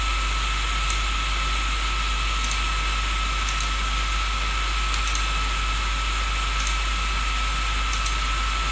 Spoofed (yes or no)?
no